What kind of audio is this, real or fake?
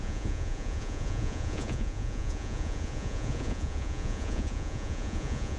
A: fake